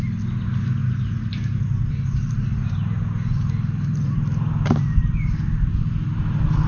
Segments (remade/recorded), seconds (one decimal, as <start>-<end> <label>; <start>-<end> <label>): 0.0-0.8 recorded; 0.8-4.5 remade; 4.5-5.0 recorded; 5.0-5.8 remade; 5.8-6.7 recorded